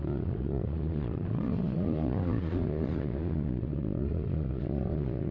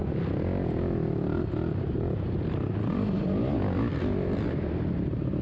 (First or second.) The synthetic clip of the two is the first